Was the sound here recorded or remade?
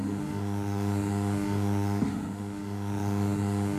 remade